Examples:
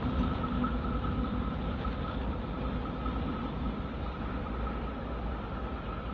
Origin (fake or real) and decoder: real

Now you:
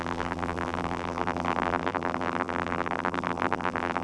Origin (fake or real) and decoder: fake, vocoder, BigVGAN v2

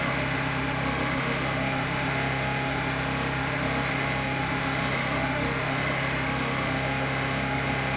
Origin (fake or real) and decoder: fake, autoencoder, DAC-VAE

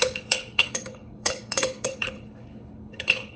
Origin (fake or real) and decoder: fake, codec, HILCodec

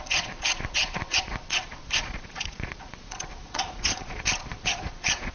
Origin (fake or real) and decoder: fake, vocoder, Vocos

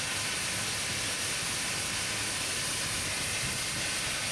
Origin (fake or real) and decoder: real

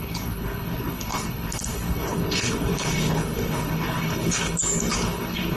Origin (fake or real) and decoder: fake, codec, HILCodec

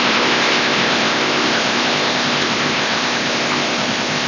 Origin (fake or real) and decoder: fake, codec, ZipCodec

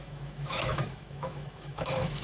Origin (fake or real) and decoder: fake, autoencoder, DAC-VAE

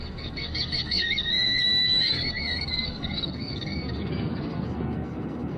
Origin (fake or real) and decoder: fake, codec, SNAC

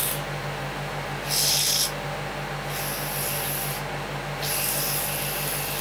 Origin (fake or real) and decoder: real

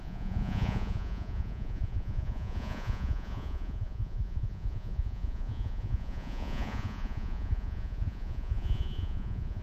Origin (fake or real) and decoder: fake, vocoder, Vocos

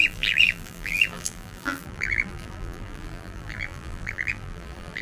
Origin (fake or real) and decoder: fake, vocoder, BigVGAN v2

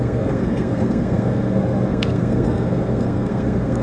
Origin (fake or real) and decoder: fake, codec, SNAC